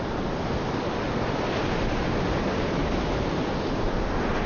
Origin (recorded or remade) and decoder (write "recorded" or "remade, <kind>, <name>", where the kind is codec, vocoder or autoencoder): recorded